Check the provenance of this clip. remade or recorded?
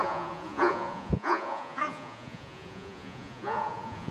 remade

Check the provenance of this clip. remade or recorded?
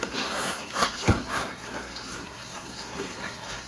remade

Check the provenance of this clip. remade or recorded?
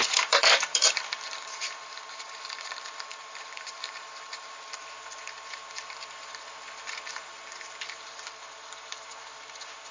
remade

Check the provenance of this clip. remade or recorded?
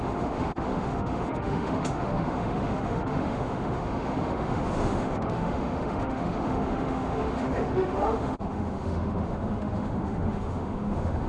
remade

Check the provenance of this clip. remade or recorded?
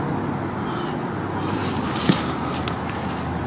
recorded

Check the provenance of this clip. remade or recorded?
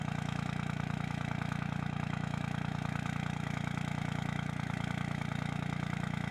remade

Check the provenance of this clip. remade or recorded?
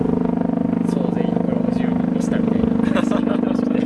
recorded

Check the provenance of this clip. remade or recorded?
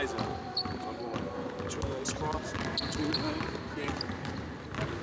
recorded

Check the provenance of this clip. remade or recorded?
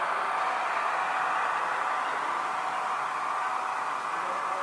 recorded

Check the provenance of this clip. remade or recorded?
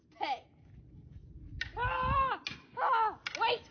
recorded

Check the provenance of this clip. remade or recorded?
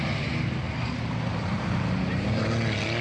recorded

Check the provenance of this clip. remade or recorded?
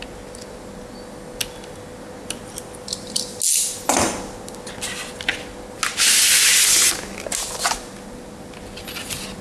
recorded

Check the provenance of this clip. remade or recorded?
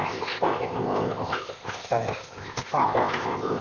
remade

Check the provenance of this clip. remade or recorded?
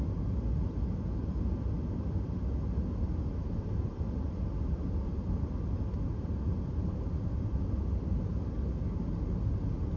recorded